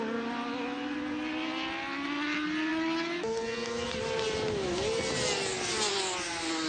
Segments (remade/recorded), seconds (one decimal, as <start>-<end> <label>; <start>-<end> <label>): 0.0-6.7 recorded